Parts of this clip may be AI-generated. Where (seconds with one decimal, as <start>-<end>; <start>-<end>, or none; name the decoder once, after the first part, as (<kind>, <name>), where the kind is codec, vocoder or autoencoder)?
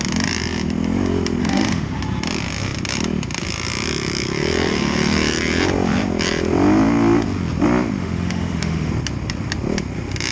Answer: 1.4-2.0 (autoencoder, DAC-VAE); 8.0-8.9